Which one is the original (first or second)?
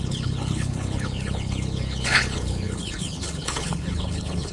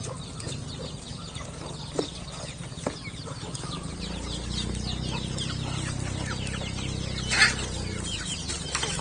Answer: second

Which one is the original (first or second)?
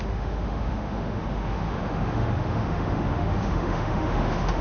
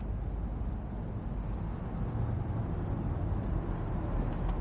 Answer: second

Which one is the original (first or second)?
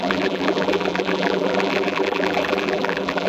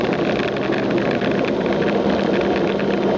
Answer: second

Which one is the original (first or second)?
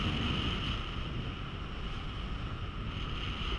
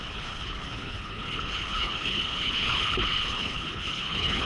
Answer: first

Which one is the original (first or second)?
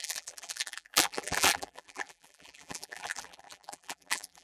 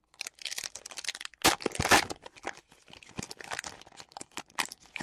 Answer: second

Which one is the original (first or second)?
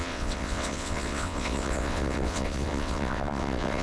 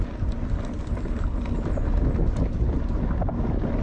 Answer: second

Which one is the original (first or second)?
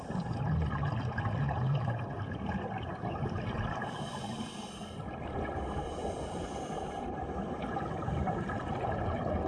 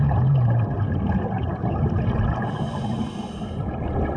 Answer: second